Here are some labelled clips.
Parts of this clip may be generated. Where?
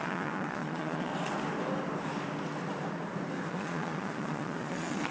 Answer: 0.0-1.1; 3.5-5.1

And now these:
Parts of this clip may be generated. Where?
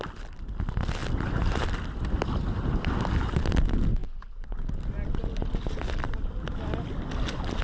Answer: none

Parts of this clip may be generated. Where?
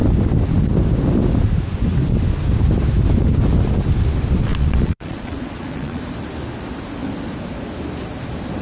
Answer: 4.5-6.0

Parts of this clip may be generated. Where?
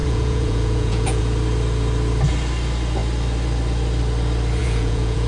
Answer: 0.0-1.2; 4.6-5.3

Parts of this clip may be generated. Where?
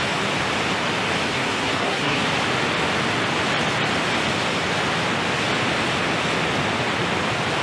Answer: 1.3-2.2